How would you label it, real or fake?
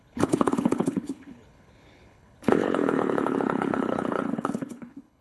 fake